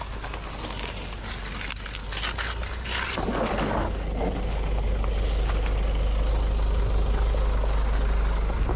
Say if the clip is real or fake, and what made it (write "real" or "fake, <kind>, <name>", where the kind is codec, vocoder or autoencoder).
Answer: real